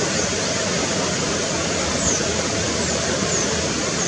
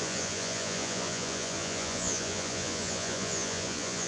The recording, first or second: first